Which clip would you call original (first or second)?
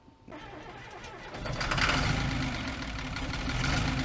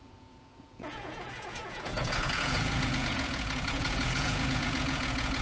first